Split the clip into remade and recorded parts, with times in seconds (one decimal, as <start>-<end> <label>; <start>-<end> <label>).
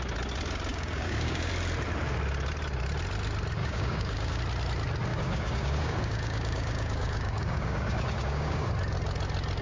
0.0-0.7 recorded; 0.7-1.5 remade; 1.5-3.6 recorded; 3.6-4.4 remade; 4.4-5.1 recorded; 5.1-8.7 remade; 8.7-9.6 recorded